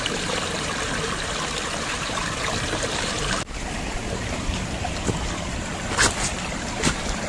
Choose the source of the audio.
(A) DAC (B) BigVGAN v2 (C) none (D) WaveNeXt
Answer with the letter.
B